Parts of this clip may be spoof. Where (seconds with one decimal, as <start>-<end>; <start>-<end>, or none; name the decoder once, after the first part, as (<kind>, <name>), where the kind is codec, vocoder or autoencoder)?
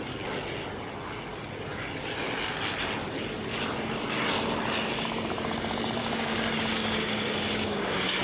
6.0-8.2 (codec, DAC)